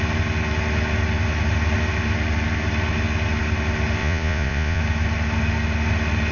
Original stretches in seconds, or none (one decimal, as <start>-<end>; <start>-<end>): 0.0-4.0; 4.8-6.3